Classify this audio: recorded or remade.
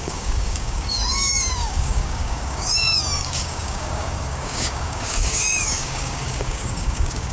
remade